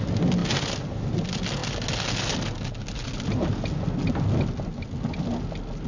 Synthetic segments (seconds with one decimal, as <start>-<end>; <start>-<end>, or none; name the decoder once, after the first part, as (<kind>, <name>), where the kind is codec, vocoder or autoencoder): none